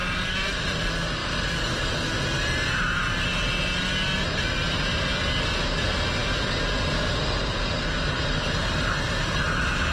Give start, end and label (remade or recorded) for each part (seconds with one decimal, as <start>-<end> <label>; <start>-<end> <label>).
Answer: 0.0-9.9 recorded